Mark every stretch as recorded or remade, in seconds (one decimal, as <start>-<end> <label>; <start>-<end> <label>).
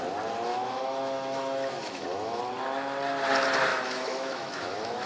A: 0.0-0.5 recorded; 0.5-2.4 remade; 2.4-3.7 recorded; 3.7-5.1 remade